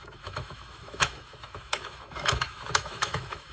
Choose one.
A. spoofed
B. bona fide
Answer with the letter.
A